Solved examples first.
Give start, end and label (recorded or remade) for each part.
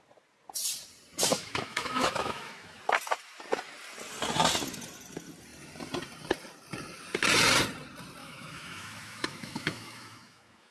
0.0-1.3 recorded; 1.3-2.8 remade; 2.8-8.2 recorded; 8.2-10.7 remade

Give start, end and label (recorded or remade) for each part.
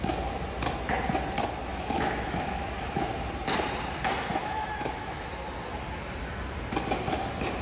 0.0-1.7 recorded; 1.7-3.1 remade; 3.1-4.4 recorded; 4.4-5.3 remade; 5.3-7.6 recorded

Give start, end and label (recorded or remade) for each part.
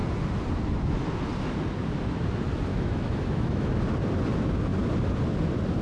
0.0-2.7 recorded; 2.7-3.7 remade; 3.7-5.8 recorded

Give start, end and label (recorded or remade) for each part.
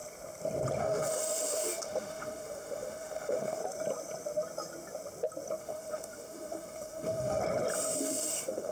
0.0-0.8 recorded; 0.8-3.6 remade; 3.6-5.6 recorded; 5.6-7.4 remade; 7.4-8.0 recorded; 8.0-8.7 remade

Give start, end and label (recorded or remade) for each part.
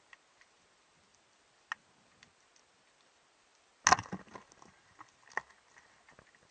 0.0-6.5 recorded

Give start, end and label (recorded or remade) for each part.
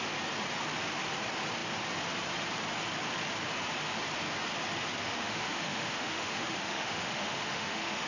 0.0-5.0 recorded; 5.0-8.1 remade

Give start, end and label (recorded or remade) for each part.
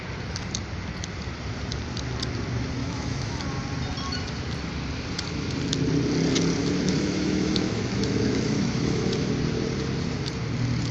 0.0-2.8 recorded; 2.8-3.4 remade; 3.4-6.6 recorded; 6.6-9.3 remade; 9.3-10.9 recorded